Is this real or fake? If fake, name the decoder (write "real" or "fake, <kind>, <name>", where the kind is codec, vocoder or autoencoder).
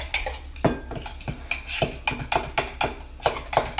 real